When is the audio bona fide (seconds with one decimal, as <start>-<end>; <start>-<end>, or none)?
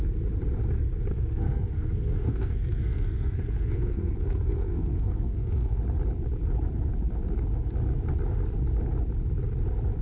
0.0-1.1; 5.8-10.0